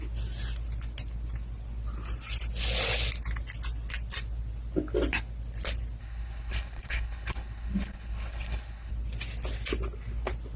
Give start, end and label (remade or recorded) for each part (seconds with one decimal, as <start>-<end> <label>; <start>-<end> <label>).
0.0-6.0 recorded; 6.0-8.9 remade; 8.9-10.6 recorded